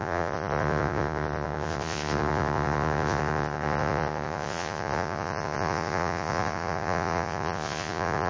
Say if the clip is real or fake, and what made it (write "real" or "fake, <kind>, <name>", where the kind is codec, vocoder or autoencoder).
fake, vocoder, Vocos